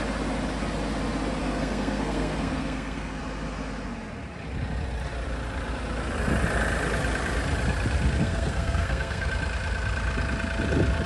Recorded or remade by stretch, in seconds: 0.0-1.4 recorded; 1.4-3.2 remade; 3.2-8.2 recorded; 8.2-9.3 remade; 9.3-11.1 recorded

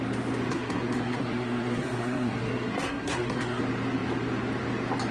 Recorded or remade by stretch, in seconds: 0.0-0.5 recorded; 0.5-3.6 remade; 3.6-5.1 recorded